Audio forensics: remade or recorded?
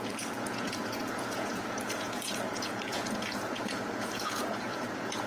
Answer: remade